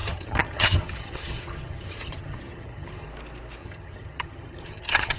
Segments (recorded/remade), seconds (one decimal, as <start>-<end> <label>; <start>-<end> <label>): 0.0-3.1 remade; 3.1-3.6 recorded; 3.6-5.2 remade